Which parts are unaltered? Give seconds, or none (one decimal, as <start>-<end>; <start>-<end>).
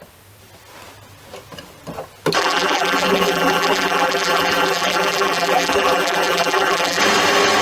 0.0-2.4; 7.0-7.6